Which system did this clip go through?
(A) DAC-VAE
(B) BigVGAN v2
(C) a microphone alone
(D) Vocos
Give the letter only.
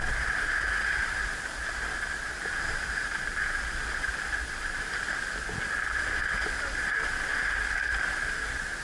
C